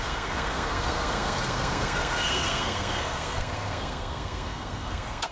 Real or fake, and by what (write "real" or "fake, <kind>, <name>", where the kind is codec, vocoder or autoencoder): fake, codec, SNAC